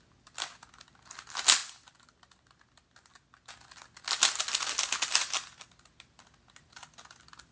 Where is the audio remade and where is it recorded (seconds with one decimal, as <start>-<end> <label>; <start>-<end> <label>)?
0.0-7.5 recorded